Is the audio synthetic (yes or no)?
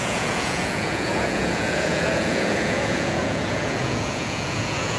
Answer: yes